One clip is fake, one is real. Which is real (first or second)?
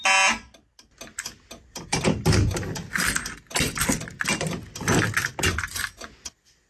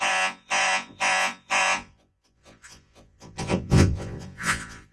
first